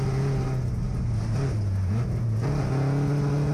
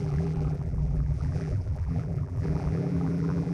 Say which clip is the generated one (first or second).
second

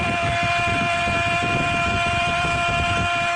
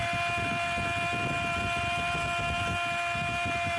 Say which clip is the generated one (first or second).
first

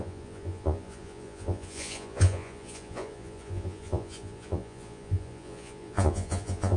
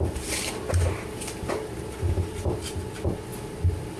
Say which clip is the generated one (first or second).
first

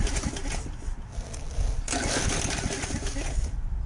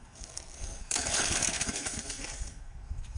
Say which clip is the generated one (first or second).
second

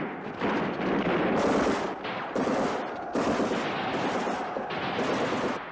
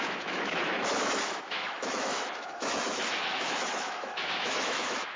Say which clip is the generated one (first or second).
second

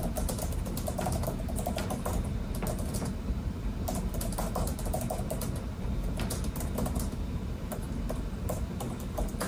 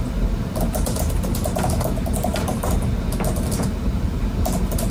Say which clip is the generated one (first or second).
first